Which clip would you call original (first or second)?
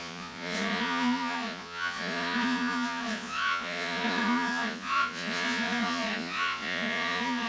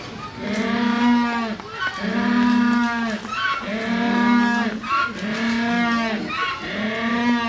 second